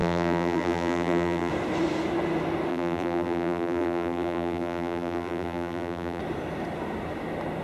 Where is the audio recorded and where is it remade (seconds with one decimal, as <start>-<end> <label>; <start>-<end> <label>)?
0.0-1.5 remade; 1.5-2.7 recorded; 2.7-6.2 remade; 6.2-7.6 recorded